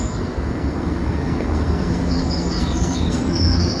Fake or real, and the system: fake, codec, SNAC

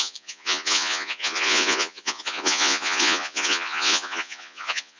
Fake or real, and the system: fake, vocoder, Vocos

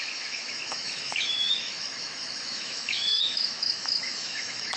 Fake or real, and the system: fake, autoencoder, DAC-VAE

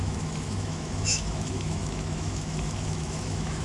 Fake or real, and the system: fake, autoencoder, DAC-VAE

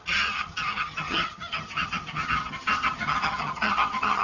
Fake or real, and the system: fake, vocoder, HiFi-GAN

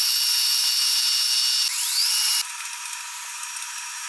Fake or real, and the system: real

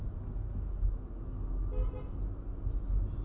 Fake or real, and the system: real